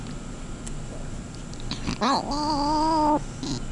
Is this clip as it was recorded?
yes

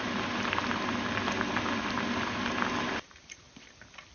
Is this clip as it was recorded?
yes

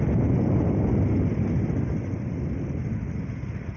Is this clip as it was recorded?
yes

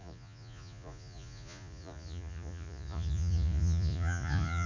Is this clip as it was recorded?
no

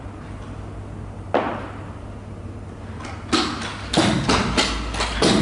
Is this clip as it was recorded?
yes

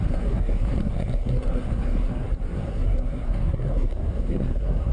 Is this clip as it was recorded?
no